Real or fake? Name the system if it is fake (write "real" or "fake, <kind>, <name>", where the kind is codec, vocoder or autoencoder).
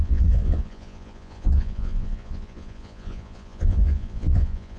fake, vocoder, Vocos